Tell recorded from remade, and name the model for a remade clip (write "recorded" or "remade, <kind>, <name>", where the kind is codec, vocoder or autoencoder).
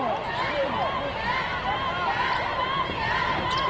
recorded